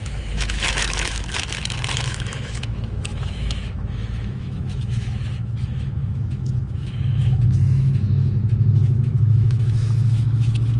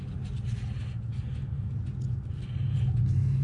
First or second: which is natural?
second